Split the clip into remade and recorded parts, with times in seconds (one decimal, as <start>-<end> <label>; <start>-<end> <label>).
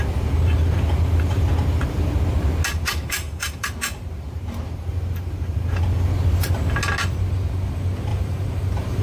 0.0-2.7 recorded; 2.7-5.8 remade; 5.8-8.1 recorded; 8.1-9.0 remade